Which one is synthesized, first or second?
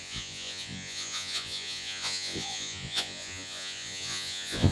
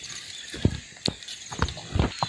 first